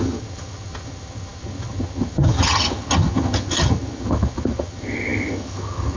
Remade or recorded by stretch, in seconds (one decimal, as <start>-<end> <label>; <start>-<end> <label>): 0.0-6.0 remade